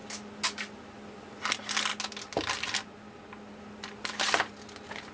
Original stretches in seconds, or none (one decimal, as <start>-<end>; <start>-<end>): 0.0-5.1